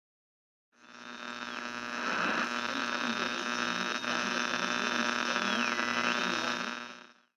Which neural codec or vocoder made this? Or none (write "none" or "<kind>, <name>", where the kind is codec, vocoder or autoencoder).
none